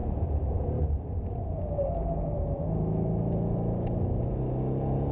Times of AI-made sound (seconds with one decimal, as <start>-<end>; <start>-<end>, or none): none